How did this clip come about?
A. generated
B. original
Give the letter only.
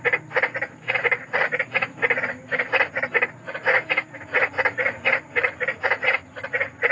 B